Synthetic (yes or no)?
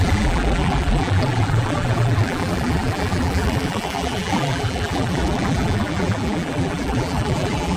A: yes